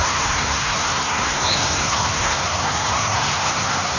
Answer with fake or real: fake